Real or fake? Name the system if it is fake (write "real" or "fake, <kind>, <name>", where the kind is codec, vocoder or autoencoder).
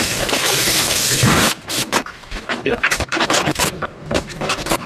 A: fake, codec, DAC